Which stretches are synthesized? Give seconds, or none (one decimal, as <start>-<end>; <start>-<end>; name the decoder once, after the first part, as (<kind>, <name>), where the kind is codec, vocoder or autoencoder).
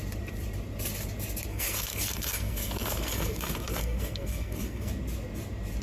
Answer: 1.5-4.9 (codec, SNAC)